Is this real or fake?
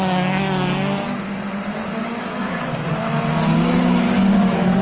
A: real